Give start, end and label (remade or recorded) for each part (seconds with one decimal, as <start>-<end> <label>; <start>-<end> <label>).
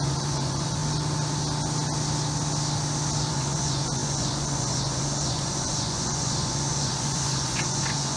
0.0-0.8 remade; 0.8-3.3 recorded; 3.3-8.2 remade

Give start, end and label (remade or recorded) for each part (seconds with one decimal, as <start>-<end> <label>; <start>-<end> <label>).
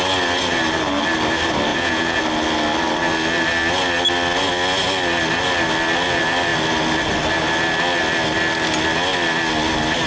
0.0-1.7 recorded; 1.7-2.2 remade; 2.2-10.1 recorded